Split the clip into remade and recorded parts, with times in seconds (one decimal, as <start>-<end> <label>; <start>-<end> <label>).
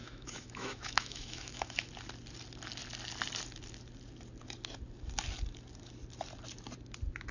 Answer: 0.0-1.9 remade; 1.9-7.3 recorded